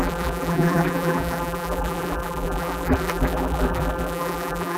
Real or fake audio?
fake